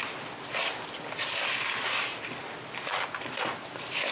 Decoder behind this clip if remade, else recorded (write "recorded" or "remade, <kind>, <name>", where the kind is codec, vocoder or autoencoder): recorded